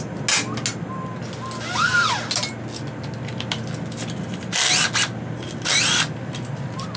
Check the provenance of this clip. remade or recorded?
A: recorded